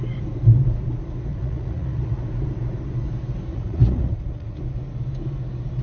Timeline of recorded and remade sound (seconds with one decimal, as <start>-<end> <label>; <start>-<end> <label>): 0.0-1.3 recorded; 1.3-2.2 remade; 2.2-3.5 recorded; 3.5-4.6 remade; 4.6-5.8 recorded